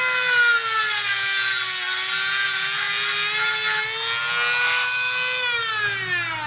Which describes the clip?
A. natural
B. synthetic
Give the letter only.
A